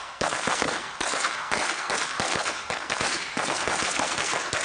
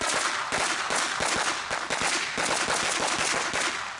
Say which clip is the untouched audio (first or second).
second